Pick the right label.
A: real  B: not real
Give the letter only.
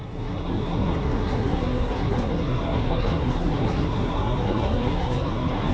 B